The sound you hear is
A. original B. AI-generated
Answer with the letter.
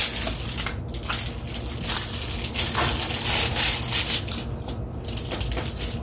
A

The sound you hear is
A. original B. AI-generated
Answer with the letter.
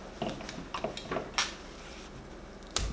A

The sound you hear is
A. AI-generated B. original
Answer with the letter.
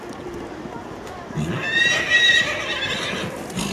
B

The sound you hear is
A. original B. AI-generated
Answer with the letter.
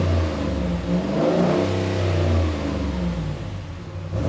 A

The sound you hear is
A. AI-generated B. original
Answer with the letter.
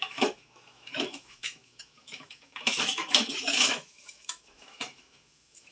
A